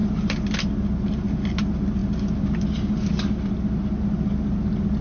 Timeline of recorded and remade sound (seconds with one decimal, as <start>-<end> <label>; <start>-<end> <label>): 0.0-5.0 recorded